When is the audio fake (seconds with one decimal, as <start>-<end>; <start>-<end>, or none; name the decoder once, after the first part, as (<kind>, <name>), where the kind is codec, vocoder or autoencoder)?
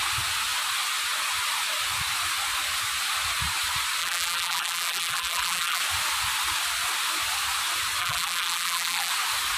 4.0-5.8 (vocoder, BigVGAN v2); 8.0-9.1